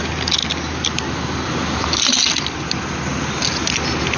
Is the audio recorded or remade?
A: recorded